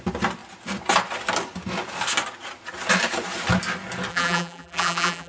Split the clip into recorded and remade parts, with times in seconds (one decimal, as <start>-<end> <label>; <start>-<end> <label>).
0.0-4.1 recorded; 4.1-5.3 remade